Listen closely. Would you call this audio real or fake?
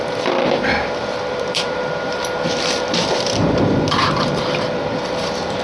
fake